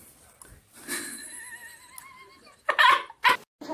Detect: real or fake real